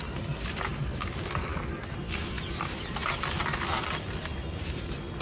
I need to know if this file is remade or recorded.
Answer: remade